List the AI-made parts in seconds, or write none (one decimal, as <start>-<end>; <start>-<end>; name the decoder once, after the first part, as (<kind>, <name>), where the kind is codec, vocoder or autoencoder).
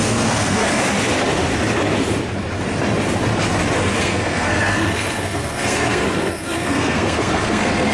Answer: 0.0-0.8 (codec, SNAC); 4.0-7.9